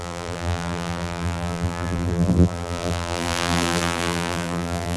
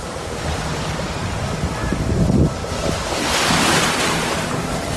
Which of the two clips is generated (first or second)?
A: first